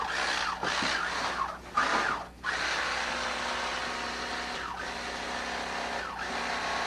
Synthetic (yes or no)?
no